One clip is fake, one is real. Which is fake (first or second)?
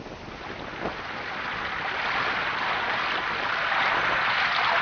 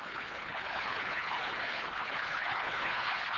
second